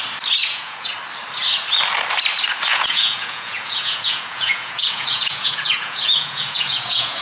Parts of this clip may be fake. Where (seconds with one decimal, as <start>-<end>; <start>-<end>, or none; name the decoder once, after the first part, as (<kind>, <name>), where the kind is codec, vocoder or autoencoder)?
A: 0.4-0.9 (vocoder, Vocos); 2.7-7.2